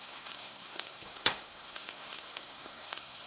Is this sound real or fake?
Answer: fake